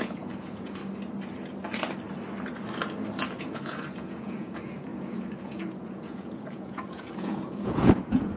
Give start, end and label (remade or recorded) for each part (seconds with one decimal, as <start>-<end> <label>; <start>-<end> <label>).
0.0-0.8 remade; 0.8-3.2 recorded; 3.2-8.4 remade